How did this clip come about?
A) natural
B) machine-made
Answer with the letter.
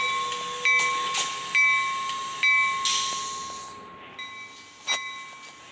A